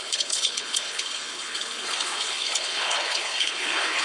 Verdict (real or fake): fake